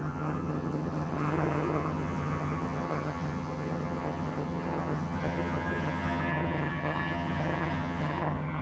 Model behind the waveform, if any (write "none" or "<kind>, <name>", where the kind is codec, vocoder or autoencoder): vocoder, HiFi-GAN